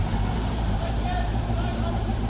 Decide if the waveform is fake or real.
fake